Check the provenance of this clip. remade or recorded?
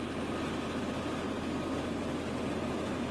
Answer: recorded